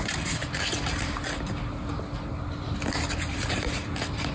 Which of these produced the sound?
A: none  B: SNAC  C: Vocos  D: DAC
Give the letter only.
A